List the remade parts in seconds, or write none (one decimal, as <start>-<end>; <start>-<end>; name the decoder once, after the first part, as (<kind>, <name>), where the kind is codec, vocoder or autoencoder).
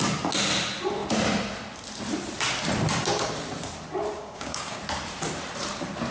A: 4.2-4.8 (codec, DAC)